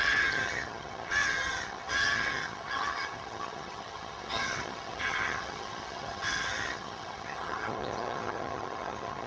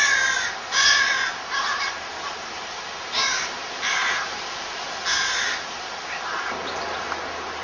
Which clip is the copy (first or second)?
first